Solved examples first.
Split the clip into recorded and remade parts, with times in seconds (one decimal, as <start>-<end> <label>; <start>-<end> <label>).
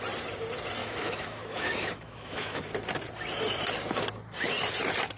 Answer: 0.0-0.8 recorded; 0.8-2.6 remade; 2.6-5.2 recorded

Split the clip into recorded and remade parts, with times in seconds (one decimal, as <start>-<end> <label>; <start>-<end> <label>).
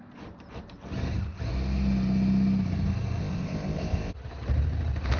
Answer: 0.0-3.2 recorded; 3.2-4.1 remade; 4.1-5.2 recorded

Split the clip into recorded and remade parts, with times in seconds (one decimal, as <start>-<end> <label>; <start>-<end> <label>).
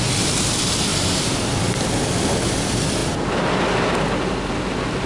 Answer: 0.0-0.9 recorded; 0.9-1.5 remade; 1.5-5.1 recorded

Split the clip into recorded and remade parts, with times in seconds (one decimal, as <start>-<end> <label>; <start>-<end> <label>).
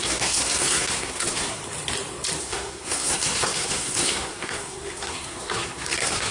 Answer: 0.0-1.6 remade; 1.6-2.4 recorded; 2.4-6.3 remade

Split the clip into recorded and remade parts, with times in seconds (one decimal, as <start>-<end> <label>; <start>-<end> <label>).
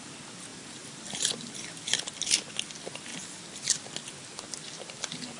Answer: 0.0-0.5 recorded; 0.5-2.0 remade; 2.0-3.1 recorded; 3.1-3.9 remade; 3.9-5.4 recorded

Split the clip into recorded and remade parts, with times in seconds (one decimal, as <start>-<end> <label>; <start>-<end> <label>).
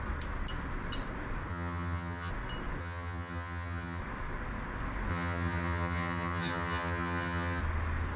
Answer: 0.0-1.5 recorded; 1.5-2.3 remade; 2.3-2.8 recorded; 2.8-4.0 remade; 4.0-5.1 recorded; 5.1-7.6 remade; 7.6-8.2 recorded